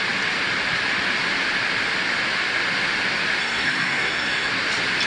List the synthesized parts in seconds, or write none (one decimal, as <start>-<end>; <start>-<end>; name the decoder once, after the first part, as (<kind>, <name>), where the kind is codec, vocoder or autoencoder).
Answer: 3.4-4.5 (codec, SNAC)